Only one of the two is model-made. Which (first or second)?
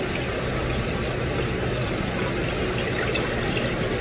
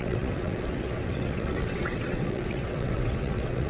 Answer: second